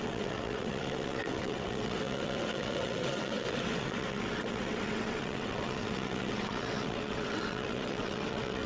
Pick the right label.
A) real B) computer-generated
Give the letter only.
B